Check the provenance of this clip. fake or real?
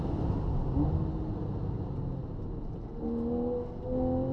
real